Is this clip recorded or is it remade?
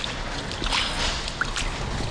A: recorded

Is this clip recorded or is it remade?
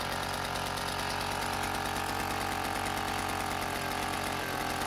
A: recorded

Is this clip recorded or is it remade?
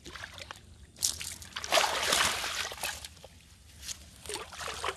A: recorded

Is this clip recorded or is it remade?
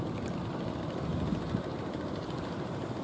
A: recorded